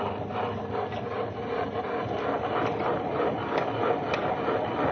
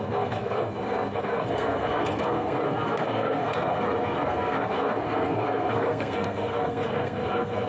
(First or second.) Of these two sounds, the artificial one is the second